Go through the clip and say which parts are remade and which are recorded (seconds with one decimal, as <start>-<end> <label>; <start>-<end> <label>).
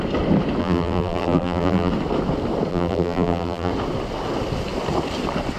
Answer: 0.0-0.6 recorded; 0.6-1.9 remade; 1.9-2.7 recorded; 2.7-3.7 remade; 3.7-5.6 recorded